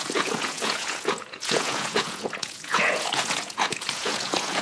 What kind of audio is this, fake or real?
fake